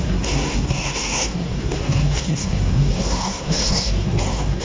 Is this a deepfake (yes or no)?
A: yes